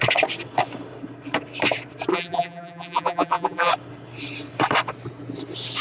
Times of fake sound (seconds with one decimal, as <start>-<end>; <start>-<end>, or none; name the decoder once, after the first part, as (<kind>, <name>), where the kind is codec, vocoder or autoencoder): 2.1-3.7 (vocoder, BigVGAN v2)